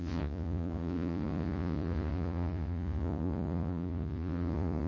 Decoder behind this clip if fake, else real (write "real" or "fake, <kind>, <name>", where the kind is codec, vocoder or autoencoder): fake, vocoder, Vocos